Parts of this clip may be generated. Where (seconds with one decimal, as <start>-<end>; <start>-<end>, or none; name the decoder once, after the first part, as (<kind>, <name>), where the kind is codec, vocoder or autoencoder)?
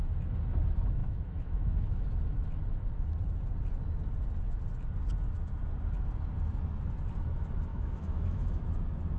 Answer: 1.0-2.0 (autoencoder, DAC-VAE); 7.7-8.6